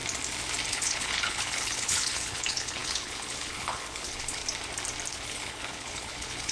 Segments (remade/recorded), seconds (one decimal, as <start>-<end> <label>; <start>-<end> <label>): 0.0-0.7 recorded; 0.7-4.4 remade; 4.4-5.1 recorded; 5.1-6.5 remade